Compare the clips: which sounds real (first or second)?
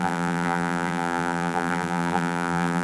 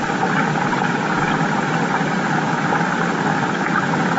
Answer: second